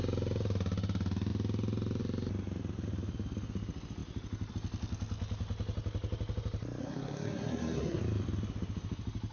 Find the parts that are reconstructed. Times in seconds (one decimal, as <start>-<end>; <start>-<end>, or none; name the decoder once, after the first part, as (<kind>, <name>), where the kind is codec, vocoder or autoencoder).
6.8-8.0 (codec, SNAC)